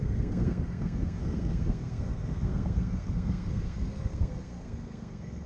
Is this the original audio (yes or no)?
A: no